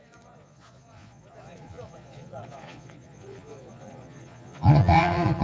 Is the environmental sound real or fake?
fake